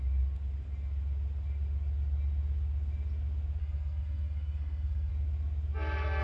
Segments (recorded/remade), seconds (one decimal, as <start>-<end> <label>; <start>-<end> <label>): 0.0-3.6 recorded; 3.6-5.1 remade; 5.1-6.2 recorded